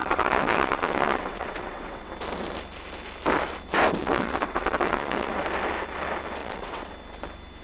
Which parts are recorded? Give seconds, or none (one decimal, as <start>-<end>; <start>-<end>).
2.1-4.0; 5.3-6.4; 6.9-7.6